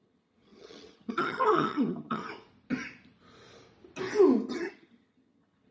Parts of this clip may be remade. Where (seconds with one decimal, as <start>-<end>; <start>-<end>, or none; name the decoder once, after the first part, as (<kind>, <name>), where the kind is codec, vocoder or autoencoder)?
0.0-2.2 (vocoder, HiFi-GAN); 4.5-5.7